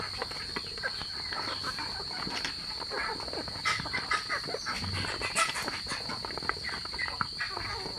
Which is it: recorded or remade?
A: recorded